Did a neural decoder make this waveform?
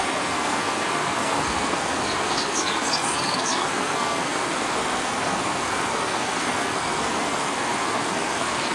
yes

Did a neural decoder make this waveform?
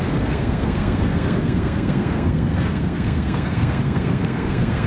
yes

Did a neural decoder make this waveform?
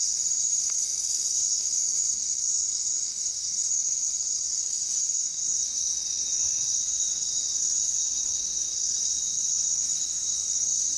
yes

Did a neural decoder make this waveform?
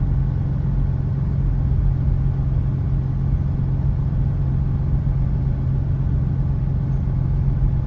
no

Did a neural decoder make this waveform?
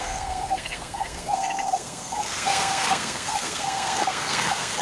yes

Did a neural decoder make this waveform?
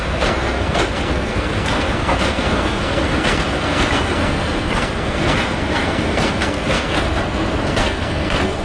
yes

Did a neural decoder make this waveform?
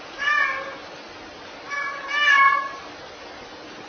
no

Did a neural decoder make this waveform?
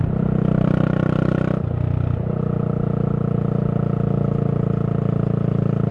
no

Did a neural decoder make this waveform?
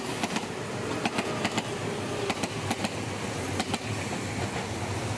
no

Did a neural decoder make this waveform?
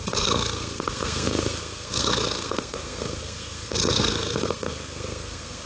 yes